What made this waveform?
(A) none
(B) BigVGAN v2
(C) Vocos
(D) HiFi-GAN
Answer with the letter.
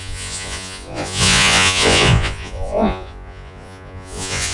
C